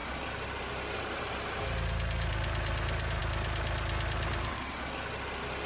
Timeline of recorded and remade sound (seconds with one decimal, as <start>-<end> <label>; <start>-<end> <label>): 0.0-0.7 remade; 0.7-5.7 recorded